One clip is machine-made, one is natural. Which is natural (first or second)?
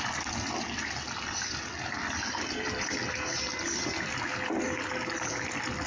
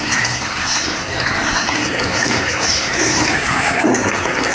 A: first